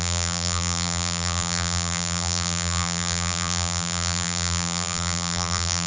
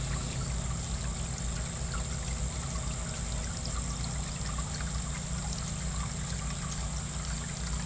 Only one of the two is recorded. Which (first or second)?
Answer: second